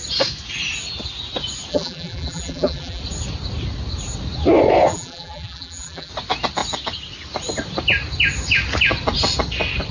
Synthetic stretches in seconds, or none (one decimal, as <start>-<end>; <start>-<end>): 1.7-3.0; 4.9-6.1